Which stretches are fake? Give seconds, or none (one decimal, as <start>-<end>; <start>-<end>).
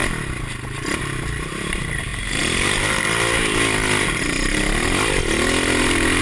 1.0-2.1; 5.8-6.2